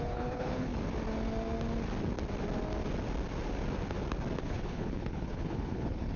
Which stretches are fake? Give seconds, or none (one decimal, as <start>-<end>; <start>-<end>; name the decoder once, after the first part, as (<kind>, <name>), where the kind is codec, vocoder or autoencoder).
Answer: 0.0-0.7 (codec, HILCodec); 4.4-6.2